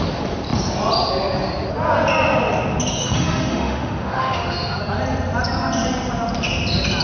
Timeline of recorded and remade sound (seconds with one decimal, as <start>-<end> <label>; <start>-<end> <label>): 0.0-3.0 recorded; 3.0-4.8 remade; 4.8-7.0 recorded